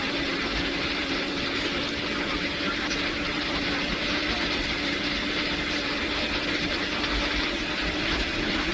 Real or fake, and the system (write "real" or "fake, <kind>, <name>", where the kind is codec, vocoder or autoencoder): real